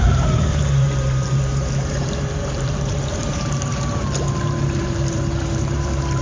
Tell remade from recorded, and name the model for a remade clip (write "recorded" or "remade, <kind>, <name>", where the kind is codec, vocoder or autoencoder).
remade, vocoder, BigVGAN v2